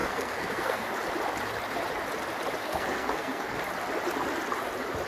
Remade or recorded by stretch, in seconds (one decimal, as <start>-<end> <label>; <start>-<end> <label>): 0.0-0.9 remade; 0.9-2.6 recorded; 2.6-3.6 remade; 3.6-5.1 recorded